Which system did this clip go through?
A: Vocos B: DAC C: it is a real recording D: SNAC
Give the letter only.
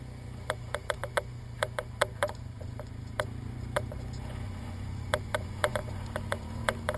A